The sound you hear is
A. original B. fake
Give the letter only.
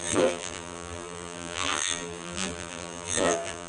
B